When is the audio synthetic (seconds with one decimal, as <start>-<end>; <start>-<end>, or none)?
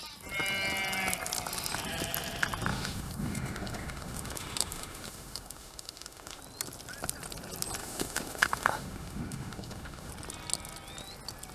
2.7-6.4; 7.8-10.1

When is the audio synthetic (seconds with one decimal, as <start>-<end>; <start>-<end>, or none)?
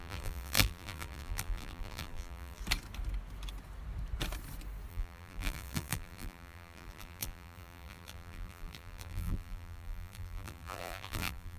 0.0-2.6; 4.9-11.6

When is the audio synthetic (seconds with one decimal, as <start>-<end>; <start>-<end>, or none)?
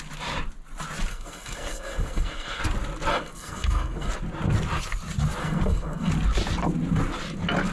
1.1-2.6; 3.1-4.1; 5.4-6.1